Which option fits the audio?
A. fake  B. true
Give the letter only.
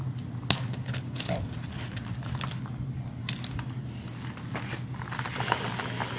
B